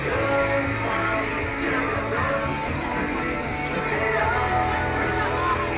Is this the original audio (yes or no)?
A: yes